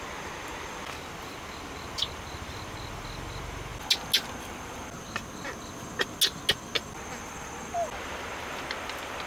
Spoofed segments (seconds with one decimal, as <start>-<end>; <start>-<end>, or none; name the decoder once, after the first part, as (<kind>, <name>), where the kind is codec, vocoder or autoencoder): none